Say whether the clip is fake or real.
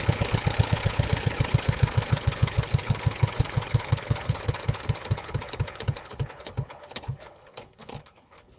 fake